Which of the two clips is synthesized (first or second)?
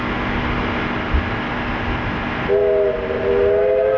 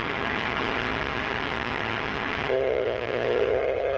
second